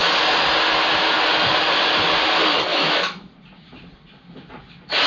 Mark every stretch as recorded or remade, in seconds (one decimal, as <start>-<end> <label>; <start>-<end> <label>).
0.0-2.7 recorded; 2.7-3.3 remade; 3.3-5.1 recorded